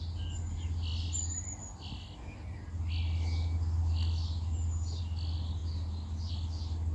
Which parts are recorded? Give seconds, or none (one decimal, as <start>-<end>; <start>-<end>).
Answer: 0.0-6.9